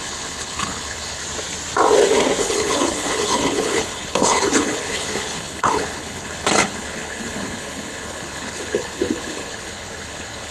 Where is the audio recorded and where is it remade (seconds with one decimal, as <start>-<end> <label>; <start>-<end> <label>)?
0.0-1.2 remade; 1.2-2.4 recorded; 2.4-10.5 remade